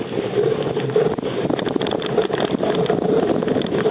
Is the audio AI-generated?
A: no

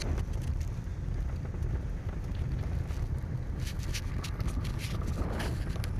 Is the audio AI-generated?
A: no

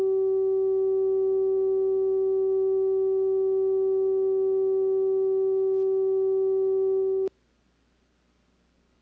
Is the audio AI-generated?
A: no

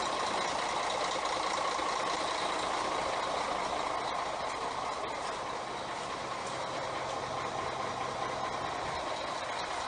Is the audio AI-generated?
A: no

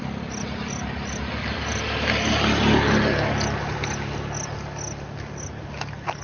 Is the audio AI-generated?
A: no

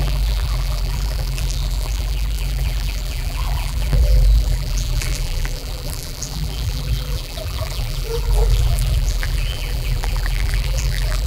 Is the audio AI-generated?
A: yes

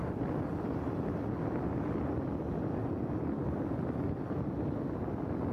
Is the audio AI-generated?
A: no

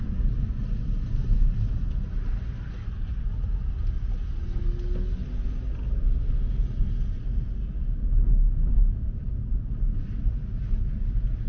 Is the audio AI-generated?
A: no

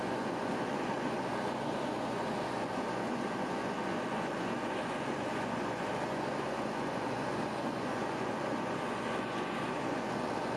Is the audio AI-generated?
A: yes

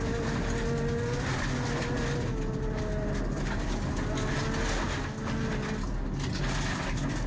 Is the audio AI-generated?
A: no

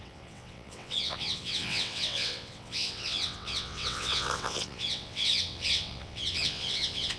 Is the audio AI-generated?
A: yes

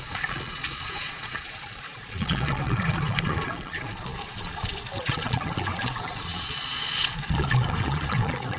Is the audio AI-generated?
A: yes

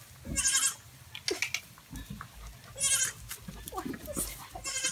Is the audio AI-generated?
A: no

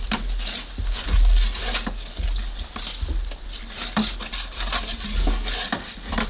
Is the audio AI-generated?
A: no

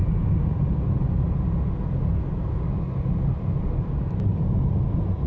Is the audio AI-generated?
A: no